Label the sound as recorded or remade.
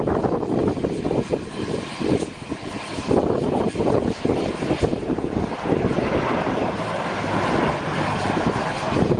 remade